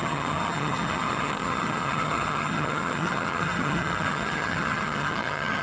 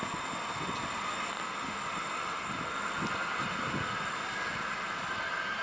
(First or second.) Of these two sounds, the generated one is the first